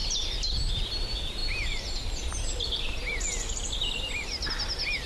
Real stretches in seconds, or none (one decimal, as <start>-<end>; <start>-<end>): 0.9-1.4; 4.5-5.1